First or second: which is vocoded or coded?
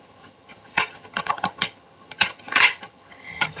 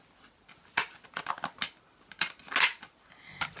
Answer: first